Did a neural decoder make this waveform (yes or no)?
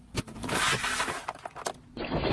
no